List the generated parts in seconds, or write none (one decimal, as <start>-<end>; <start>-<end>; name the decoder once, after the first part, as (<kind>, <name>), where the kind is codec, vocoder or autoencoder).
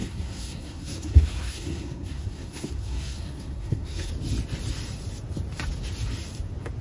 0.0-4.1 (codec, SNAC)